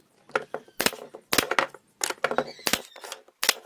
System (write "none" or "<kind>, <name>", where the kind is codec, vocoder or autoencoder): none